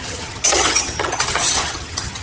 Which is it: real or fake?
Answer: fake